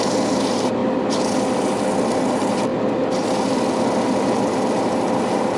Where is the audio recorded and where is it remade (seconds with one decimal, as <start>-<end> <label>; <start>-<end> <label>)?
0.0-5.6 recorded